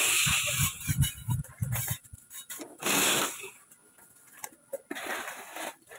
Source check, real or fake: real